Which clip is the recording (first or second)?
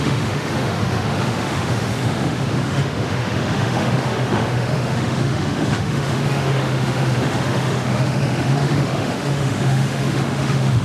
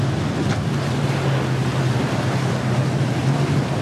second